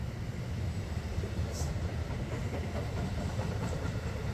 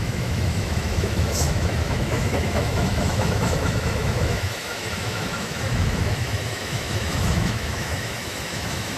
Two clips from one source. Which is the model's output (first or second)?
second